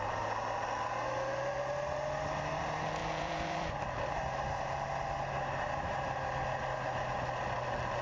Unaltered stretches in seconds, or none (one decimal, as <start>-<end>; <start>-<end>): 0.0-3.0; 3.7-8.0